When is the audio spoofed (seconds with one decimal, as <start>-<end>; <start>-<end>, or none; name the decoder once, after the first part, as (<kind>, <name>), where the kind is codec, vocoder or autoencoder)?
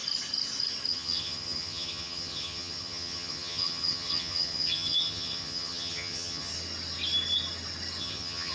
0.9-6.5 (vocoder, HiFi-GAN); 8.0-8.5